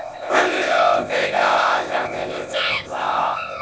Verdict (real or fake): fake